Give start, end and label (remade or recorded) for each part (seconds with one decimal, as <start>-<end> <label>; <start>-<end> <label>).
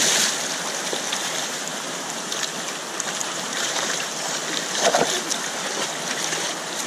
0.0-1.2 recorded; 1.2-2.3 remade; 2.3-3.2 recorded; 3.2-4.1 remade; 4.1-6.9 recorded